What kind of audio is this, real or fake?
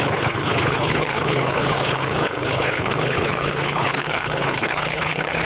fake